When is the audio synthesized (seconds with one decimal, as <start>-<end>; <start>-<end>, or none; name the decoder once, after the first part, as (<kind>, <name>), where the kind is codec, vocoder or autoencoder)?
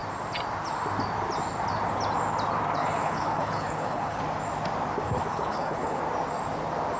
2.8-4.2 (codec, HILCodec); 5.3-6.0